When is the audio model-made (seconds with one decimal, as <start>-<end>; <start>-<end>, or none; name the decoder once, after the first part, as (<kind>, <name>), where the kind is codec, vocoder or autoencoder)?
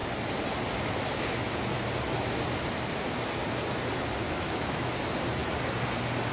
4.2-4.9 (autoencoder, DAC-VAE)